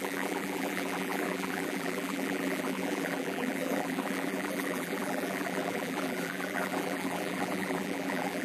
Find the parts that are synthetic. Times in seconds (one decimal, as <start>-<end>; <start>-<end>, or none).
0.0-8.4